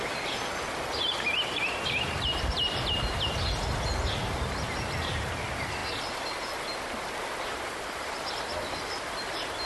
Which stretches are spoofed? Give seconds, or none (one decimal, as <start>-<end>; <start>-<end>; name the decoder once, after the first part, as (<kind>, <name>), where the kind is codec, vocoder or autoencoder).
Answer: none